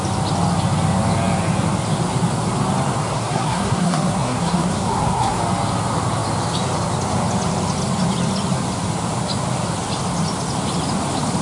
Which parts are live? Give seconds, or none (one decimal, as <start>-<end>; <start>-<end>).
0.0-3.1; 5.4-11.4